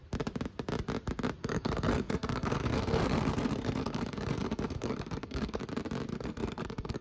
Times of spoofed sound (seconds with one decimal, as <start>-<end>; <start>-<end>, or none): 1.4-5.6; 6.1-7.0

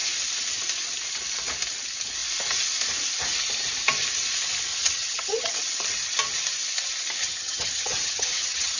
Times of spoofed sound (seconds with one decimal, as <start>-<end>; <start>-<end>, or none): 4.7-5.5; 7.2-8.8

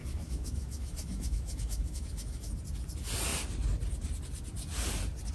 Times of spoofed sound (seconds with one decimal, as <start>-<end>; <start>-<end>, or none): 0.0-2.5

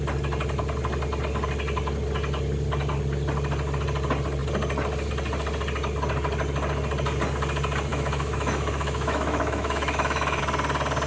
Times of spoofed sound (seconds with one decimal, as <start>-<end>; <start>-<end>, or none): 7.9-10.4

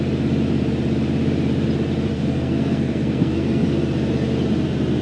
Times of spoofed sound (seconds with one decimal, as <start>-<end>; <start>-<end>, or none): 2.1-3.7